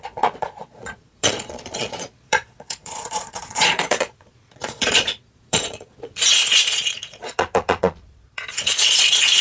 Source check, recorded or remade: remade